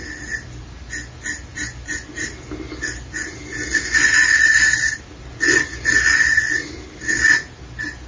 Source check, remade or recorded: recorded